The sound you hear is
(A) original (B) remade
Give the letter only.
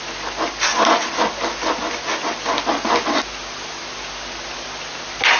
A